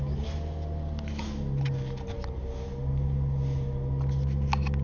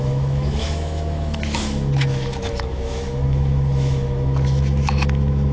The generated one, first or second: second